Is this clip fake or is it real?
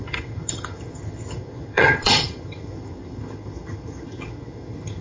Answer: fake